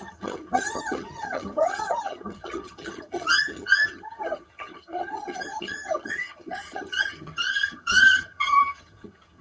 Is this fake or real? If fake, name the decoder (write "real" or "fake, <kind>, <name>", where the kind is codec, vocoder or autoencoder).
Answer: fake, vocoder, HiFi-GAN